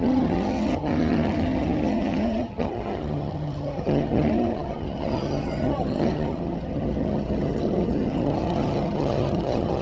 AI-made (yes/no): yes